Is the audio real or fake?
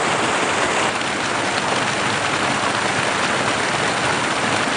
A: real